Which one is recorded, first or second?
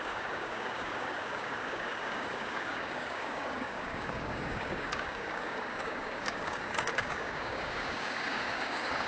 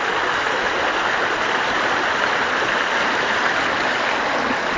second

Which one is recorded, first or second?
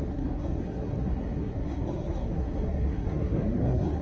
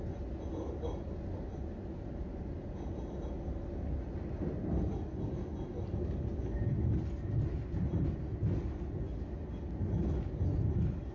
second